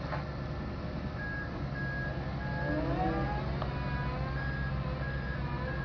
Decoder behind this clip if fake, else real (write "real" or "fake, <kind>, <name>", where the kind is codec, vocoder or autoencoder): real